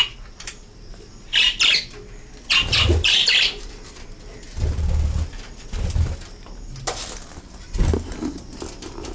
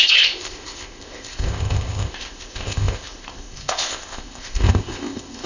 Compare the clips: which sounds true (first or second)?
first